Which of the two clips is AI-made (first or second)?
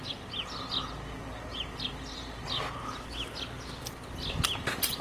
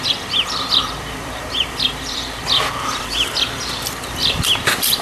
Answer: second